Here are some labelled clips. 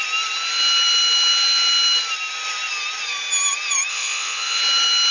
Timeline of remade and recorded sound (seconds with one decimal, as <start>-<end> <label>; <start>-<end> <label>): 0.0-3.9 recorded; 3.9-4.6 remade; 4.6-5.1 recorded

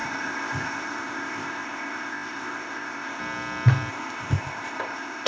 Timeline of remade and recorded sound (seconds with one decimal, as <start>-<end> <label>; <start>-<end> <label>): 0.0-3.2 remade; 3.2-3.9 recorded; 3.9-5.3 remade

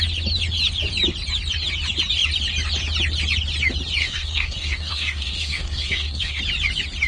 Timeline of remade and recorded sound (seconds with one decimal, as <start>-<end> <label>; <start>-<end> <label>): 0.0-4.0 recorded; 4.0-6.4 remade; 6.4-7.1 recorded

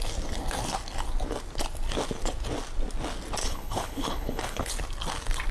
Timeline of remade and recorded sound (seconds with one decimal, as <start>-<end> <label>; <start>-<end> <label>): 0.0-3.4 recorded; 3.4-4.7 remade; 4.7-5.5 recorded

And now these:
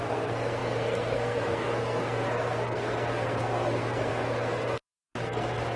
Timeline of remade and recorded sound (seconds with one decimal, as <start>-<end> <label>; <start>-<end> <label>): 0.0-5.8 remade